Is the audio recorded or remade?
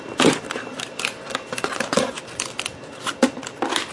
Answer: recorded